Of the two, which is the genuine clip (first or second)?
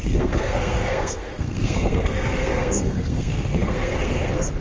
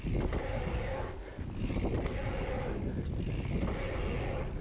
second